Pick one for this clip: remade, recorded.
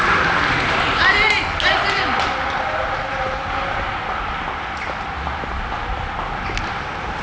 recorded